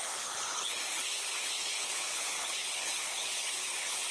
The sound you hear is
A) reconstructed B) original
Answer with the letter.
A